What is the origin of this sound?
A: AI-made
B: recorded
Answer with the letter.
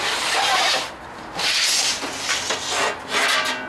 B